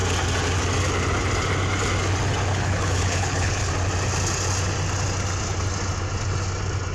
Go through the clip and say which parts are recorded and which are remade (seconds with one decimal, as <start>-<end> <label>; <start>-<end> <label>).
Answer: 0.0-2.5 recorded; 2.5-3.7 remade; 3.7-6.9 recorded